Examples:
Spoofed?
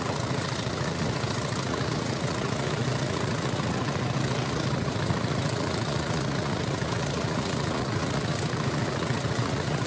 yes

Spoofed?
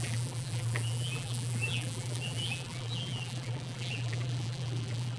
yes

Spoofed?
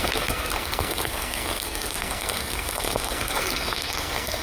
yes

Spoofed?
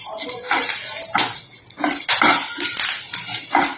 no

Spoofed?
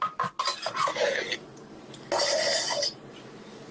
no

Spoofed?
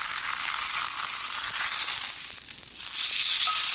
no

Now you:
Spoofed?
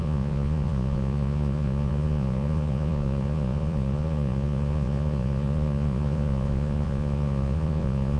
yes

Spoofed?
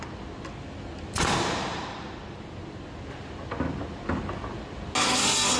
no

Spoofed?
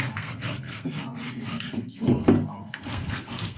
yes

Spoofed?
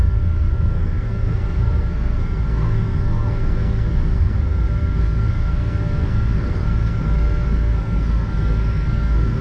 yes